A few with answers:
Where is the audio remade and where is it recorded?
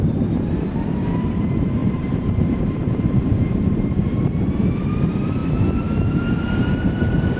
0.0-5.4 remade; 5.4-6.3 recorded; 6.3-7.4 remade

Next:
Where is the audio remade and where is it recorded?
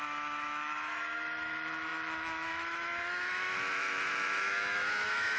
0.0-5.4 remade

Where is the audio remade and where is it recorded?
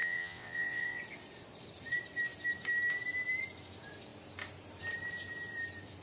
0.0-1.0 remade; 1.0-6.0 recorded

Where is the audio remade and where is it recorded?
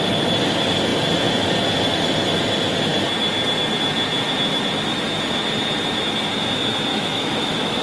0.0-6.9 recorded; 6.9-7.8 remade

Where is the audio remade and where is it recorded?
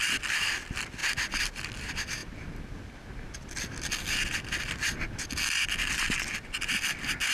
0.0-7.3 recorded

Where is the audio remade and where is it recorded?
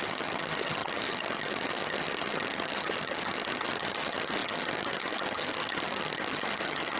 0.0-7.0 remade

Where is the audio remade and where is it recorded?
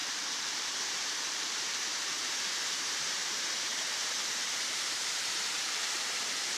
0.0-6.6 remade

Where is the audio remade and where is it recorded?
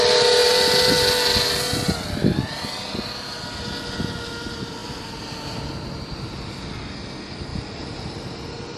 0.0-7.5 recorded; 7.5-8.8 remade